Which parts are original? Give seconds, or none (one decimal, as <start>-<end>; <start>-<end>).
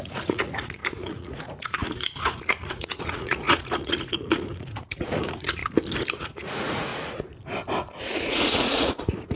5.6-6.2; 6.9-8.0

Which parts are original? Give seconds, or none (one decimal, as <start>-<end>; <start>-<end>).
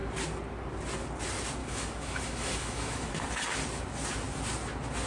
0.0-1.6; 3.1-5.1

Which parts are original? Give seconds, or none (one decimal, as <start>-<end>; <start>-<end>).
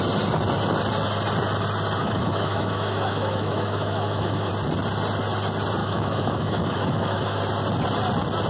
0.0-2.0; 4.5-5.8; 7.4-8.5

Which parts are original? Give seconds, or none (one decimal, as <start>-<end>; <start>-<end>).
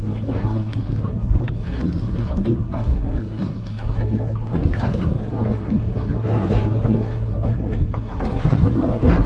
none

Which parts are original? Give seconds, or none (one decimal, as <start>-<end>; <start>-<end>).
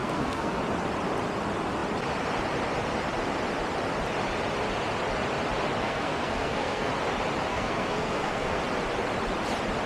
0.6-5.8; 6.9-7.5; 8.6-9.9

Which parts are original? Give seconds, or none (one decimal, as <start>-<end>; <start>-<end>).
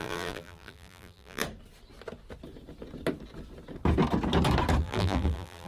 1.4-4.8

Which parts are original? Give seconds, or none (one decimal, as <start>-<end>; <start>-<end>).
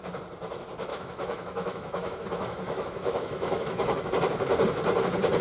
0.0-0.9; 4.1-5.4